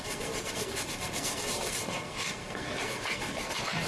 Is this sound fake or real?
fake